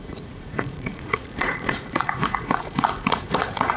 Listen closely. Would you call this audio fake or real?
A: fake